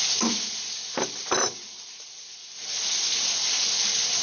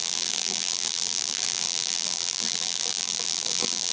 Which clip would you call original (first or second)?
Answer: first